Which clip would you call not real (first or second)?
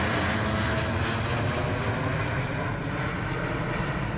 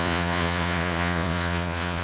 second